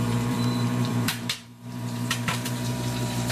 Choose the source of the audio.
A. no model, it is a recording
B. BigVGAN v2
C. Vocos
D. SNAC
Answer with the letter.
B